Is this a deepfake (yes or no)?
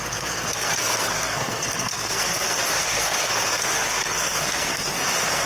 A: yes